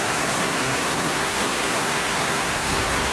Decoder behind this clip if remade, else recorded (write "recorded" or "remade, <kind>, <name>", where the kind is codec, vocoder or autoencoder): remade, codec, SNAC